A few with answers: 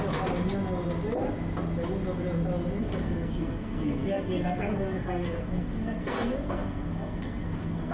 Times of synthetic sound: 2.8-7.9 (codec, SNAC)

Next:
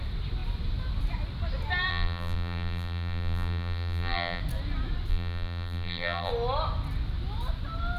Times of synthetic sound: 1.9-4.4 (vocoder, BigVGAN v2); 5.1-6.3

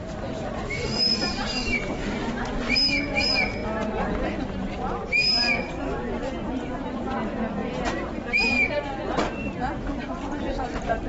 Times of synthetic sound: 0.0-1.8 (vocoder, BigVGAN v2); 7.6-8.7

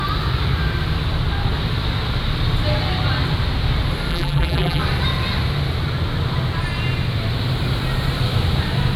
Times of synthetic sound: 4.1-4.8 (vocoder, BigVGAN v2)

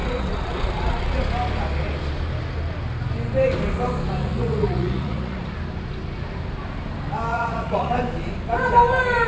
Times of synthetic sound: 0.0-1.2 (vocoder, Vocos); 4.2-5.5; 7.3-7.9

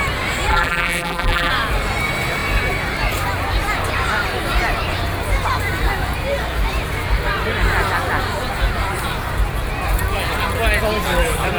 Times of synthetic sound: 0.5-1.5 (vocoder, BigVGAN v2)

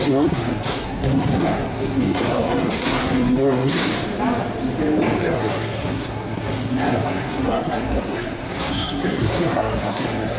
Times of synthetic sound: 0.0-3.9 (codec, SNAC); 5.2-10.4